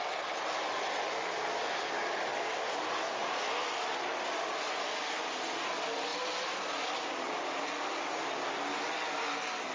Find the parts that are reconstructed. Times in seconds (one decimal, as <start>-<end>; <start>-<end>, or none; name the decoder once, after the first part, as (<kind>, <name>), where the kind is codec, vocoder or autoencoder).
none

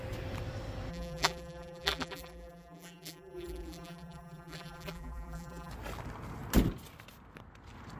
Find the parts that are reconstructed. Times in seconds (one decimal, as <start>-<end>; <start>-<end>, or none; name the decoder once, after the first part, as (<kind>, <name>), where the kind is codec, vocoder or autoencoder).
0.9-5.7 (vocoder, BigVGAN v2)

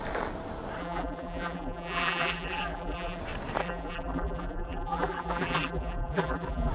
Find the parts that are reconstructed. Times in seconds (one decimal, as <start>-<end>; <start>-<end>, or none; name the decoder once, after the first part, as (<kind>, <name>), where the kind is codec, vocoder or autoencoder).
0.8-3.2 (vocoder, BigVGAN v2); 3.6-6.7

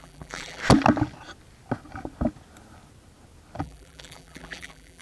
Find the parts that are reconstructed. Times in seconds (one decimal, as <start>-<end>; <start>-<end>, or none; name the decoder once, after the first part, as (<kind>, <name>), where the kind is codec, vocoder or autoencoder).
0.0-0.6 (vocoder, BigVGAN v2); 3.6-5.0

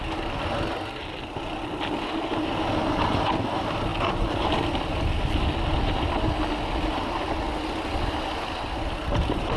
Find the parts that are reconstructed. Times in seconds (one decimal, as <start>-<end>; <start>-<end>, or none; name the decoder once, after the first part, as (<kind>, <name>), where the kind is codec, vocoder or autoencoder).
none